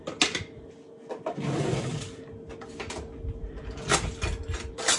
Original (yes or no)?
yes